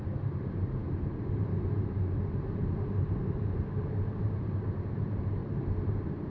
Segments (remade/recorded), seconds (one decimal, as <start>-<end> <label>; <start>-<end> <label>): 0.0-6.3 remade